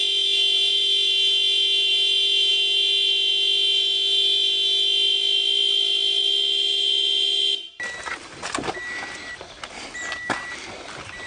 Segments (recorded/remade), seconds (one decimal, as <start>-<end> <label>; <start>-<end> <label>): 0.0-11.3 recorded

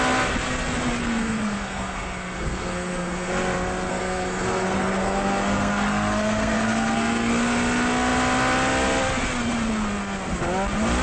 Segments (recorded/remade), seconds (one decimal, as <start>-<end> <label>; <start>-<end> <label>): 0.0-1.0 recorded; 1.0-3.3 remade; 3.3-3.9 recorded; 3.9-7.3 remade; 7.3-11.0 recorded

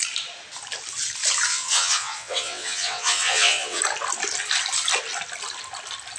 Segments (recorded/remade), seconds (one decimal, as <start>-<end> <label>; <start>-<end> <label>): 0.0-1.5 recorded; 1.5-3.8 remade; 3.8-6.2 recorded

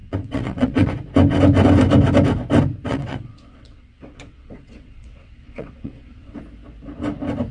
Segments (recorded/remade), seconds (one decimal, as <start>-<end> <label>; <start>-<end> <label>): 0.0-0.9 remade; 0.9-2.9 recorded; 2.9-6.4 remade; 6.4-7.5 recorded

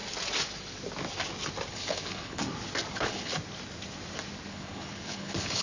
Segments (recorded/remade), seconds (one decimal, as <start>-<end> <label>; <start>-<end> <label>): 0.0-1.7 recorded; 1.7-2.4 remade; 2.4-2.9 recorded; 2.9-3.3 remade; 3.3-4.5 recorded; 4.5-5.6 remade

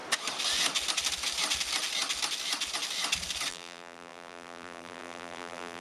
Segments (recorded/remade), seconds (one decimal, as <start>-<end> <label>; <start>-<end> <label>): 0.0-3.5 recorded; 3.5-5.8 remade